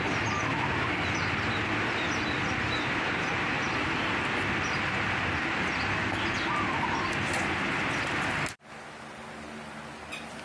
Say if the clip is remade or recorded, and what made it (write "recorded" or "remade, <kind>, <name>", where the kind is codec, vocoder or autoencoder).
recorded